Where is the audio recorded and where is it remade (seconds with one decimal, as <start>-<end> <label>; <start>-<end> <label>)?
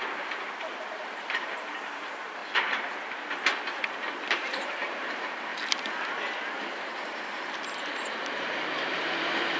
0.0-2.4 remade; 2.4-3.9 recorded; 3.9-5.5 remade; 5.5-6.9 recorded; 6.9-8.2 remade; 8.2-8.9 recorded; 8.9-9.6 remade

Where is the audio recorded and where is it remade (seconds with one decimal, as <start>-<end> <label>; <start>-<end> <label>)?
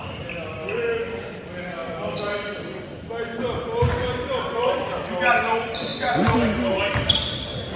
0.0-7.8 recorded